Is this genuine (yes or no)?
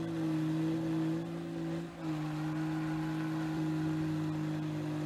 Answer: yes